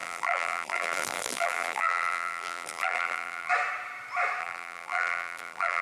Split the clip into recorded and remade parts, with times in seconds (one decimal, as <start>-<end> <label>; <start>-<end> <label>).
0.0-3.5 remade; 3.5-4.4 recorded; 4.4-5.8 remade